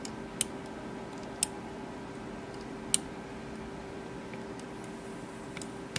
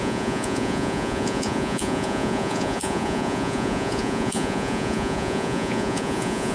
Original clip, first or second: first